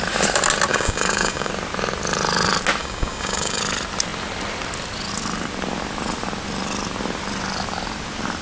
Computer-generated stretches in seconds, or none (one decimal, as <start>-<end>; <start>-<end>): 0.7-1.5; 2.8-3.6